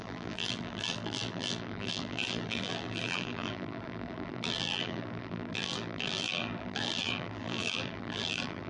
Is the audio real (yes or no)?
no